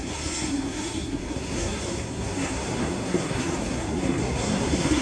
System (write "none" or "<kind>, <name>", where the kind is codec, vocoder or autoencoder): codec, SNAC